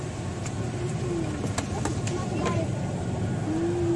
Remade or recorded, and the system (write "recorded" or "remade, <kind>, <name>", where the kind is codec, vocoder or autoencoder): recorded